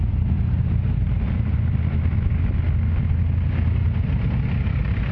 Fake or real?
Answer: real